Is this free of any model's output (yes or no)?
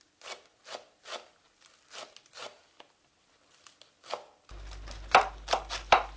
yes